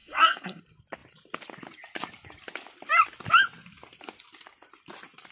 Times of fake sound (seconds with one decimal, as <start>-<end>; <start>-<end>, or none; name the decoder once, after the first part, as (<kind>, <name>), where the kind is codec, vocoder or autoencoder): 0.0-0.6 (codec, SNAC)